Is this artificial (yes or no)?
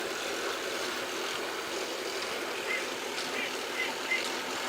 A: no